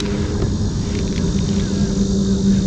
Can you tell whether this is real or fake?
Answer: real